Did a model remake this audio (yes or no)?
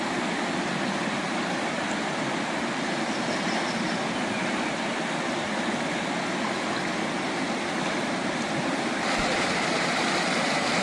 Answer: no